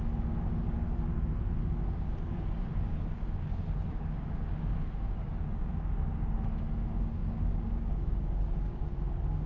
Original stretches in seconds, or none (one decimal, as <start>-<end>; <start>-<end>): none